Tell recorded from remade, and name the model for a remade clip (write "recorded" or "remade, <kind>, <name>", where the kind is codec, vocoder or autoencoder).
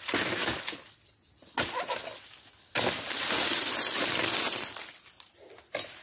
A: recorded